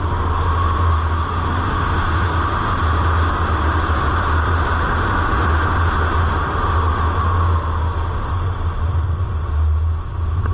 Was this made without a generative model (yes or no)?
yes